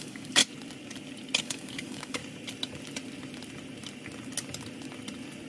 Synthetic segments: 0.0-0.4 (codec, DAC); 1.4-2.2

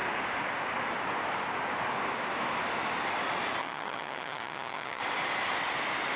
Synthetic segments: 3.6-5.0 (vocoder, HiFi-GAN)

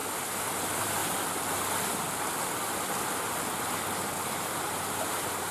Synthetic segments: 0.5-1.0 (vocoder, BigVGAN v2); 4.3-5.5